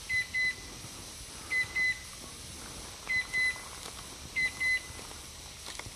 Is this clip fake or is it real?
real